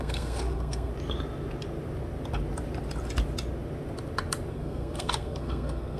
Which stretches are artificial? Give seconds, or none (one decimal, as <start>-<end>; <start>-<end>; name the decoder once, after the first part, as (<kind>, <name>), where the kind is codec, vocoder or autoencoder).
0.0-0.9 (codec, SNAC); 4.5-6.0